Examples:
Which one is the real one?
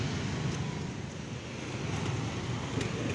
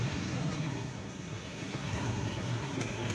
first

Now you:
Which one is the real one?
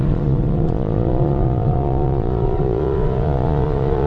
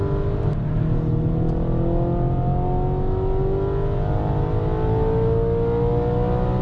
second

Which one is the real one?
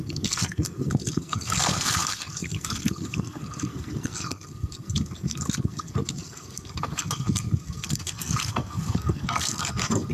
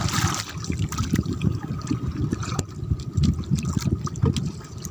second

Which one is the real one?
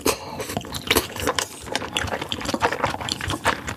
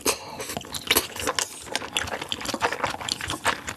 second